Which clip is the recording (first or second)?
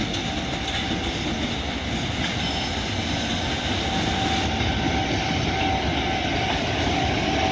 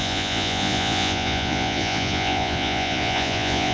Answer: first